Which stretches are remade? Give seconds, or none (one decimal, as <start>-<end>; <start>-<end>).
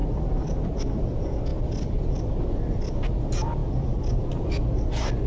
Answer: none